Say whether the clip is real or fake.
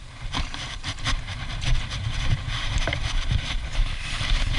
fake